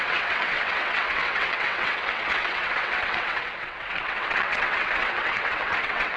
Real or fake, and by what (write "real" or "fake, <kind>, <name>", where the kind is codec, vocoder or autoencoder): fake, vocoder, WaveNeXt